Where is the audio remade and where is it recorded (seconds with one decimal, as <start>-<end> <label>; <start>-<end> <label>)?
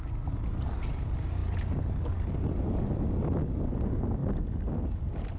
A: 0.0-5.4 recorded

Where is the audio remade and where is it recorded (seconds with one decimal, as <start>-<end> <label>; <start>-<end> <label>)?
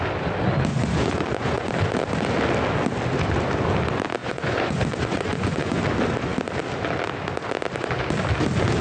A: 0.0-0.7 recorded; 0.7-1.7 remade; 1.7-4.2 recorded; 4.2-5.8 remade; 5.8-8.8 recorded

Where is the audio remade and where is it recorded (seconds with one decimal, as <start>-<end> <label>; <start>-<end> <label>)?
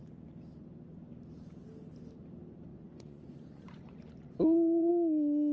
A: 0.0-2.7 recorded; 2.7-4.9 remade; 4.9-5.5 recorded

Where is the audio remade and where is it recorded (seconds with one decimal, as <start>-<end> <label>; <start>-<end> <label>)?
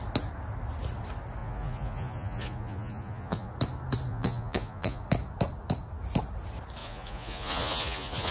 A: 0.0-1.4 recorded; 1.4-3.5 remade; 3.5-4.1 recorded; 4.1-5.0 remade; 5.0-6.8 recorded; 6.8-8.3 remade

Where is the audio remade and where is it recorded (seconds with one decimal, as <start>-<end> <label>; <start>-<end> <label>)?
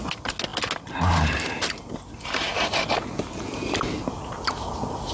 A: 0.0-5.1 recorded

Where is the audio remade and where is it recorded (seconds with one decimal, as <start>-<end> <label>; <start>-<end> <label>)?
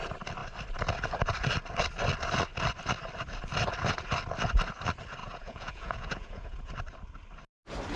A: 0.0-5.2 recorded; 5.2-6.7 remade; 6.7-8.0 recorded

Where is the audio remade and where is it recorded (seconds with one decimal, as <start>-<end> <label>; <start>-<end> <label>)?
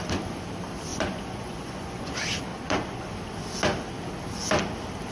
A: 0.0-0.9 recorded; 0.9-2.1 remade; 2.1-2.5 recorded; 2.5-3.1 remade; 3.1-5.1 recorded